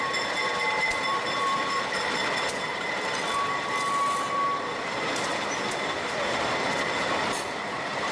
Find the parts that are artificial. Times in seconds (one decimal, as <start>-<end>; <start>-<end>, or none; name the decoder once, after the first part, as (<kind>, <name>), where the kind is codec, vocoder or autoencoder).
0.0-2.2 (vocoder, BigVGAN v2); 7.1-8.1